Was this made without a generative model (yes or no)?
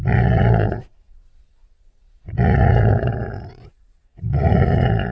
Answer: no